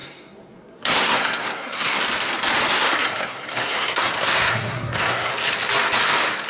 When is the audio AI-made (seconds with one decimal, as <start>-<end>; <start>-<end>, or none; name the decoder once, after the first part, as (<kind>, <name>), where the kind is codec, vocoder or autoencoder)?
0.0-2.0 (codec, SNAC); 2.7-5.3